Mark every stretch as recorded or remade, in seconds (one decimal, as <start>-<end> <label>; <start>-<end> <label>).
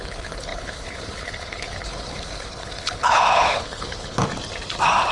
0.0-4.2 remade; 4.2-5.1 recorded